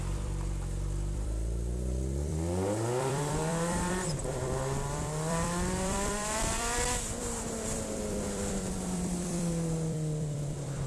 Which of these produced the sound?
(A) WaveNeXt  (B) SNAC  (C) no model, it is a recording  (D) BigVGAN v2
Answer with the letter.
D